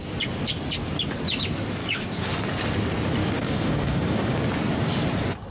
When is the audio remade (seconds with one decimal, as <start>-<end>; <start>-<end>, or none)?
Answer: 1.8-2.3; 3.2-4.4